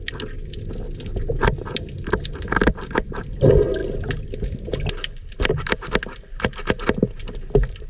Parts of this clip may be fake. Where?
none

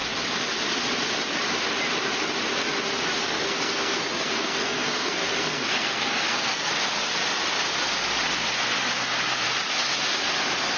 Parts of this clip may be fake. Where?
3.2-6.7

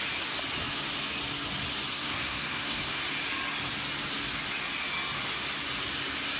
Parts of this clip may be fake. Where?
1.9-3.0

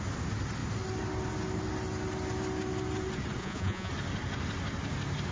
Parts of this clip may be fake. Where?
3.4-3.9

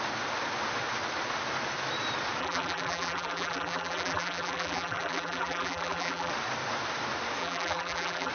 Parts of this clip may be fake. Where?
2.4-6.3; 7.4-8.3

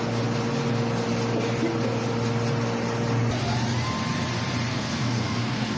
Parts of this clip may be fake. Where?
4.7-5.8

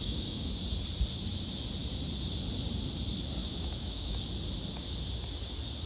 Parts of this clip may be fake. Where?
0.0-0.5; 3.4-4.2

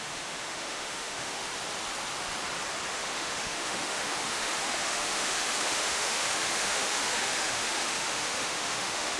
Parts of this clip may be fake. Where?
0.0-1.5; 2.9-9.2